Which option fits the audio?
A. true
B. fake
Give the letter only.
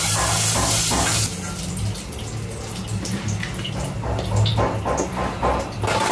A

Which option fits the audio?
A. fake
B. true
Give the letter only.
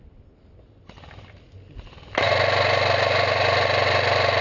B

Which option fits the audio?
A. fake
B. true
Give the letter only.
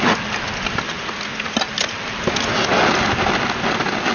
B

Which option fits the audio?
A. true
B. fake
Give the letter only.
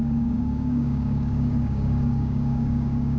B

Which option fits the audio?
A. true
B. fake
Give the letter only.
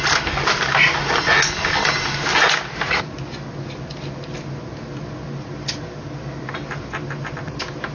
A